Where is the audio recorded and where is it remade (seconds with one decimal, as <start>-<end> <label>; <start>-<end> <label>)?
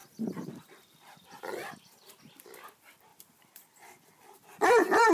0.0-1.0 remade; 1.0-3.1 recorded; 3.1-5.1 remade